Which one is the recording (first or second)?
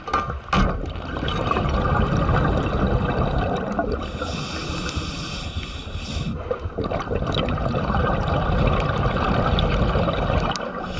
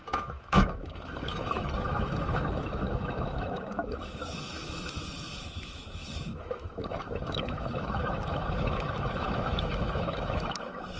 first